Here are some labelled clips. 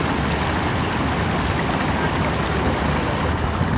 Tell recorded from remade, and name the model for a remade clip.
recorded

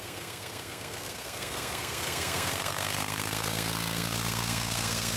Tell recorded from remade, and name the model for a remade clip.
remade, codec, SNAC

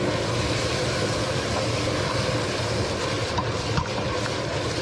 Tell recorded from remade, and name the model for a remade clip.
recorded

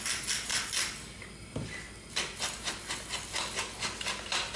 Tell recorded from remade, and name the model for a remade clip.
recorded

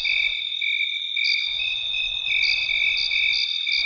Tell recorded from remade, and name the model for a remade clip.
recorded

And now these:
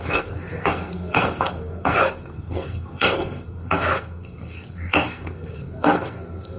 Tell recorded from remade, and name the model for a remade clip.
remade, codec, SNAC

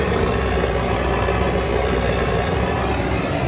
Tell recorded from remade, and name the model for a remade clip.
recorded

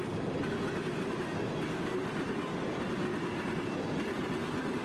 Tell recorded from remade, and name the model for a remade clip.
recorded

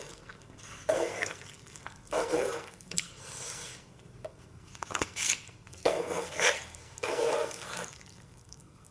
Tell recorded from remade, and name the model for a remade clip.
remade, codec, SNAC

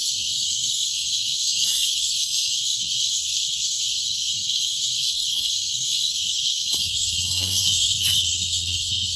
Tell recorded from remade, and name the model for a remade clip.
remade, codec, SNAC